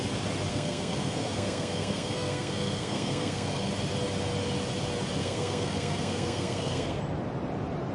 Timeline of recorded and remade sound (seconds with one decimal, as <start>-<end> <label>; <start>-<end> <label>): 0.0-0.5 recorded; 0.5-3.7 remade; 3.7-5.2 recorded; 5.2-7.0 remade; 7.0-7.9 recorded